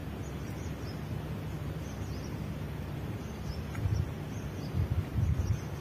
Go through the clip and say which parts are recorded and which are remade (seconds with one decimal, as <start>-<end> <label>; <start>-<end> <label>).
0.0-5.8 recorded